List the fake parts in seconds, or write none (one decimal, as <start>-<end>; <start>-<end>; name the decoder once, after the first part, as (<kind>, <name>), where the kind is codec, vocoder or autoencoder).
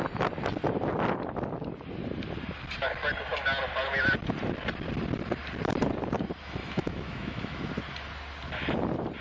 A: 6.6-7.7 (autoencoder, DAC-VAE)